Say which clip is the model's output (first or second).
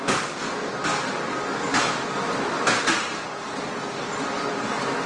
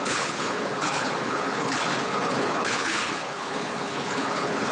second